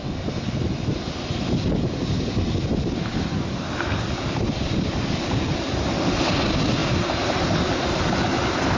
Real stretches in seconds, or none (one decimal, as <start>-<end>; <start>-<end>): 0.0-8.8